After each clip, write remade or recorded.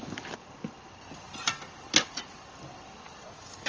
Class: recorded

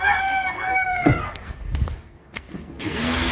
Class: remade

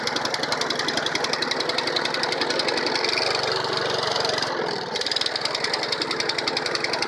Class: remade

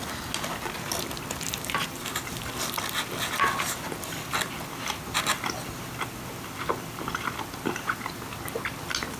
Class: recorded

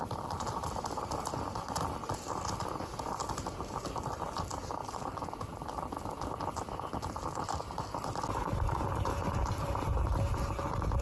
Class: recorded